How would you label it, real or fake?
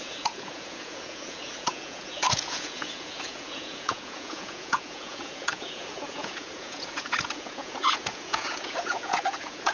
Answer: fake